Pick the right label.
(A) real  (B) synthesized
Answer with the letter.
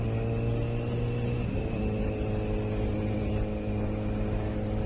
A